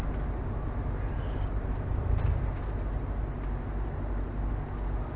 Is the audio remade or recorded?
recorded